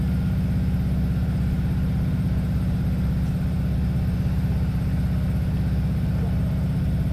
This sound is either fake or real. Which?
real